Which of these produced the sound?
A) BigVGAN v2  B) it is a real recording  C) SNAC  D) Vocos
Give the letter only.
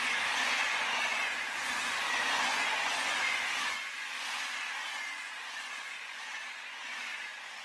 D